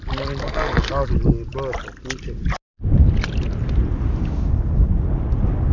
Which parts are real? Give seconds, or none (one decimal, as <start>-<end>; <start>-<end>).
0.0-0.4; 0.9-5.7